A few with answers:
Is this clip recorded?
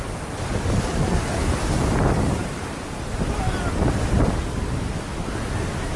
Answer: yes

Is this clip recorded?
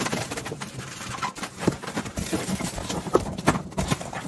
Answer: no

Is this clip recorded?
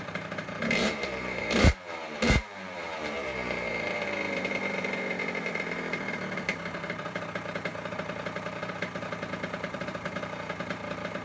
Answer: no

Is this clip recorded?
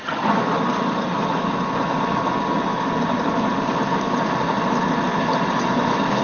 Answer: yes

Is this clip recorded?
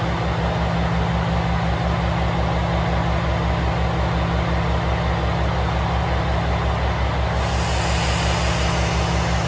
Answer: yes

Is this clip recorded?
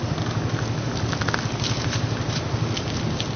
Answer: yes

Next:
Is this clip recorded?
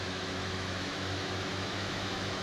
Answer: no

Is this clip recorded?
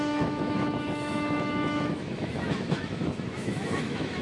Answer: no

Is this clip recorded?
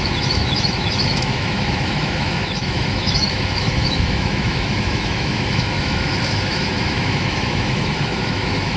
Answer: no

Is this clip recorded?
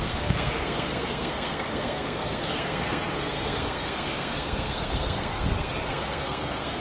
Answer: no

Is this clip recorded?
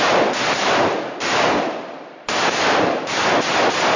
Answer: yes